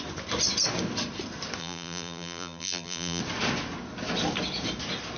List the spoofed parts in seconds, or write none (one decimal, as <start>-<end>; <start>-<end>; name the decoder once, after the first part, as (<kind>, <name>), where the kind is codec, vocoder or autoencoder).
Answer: 1.6-3.2 (vocoder, BigVGAN v2)